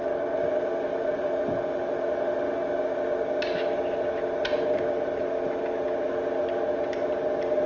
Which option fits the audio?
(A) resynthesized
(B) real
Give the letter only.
B